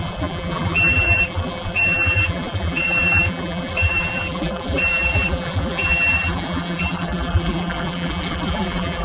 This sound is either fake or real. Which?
fake